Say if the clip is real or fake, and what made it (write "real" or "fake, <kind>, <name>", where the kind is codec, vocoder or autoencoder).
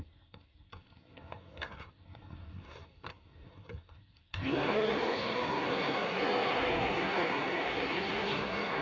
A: fake, codec, SNAC